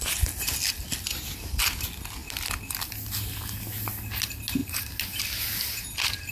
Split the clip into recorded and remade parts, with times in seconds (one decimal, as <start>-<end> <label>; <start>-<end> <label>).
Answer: 0.0-6.3 recorded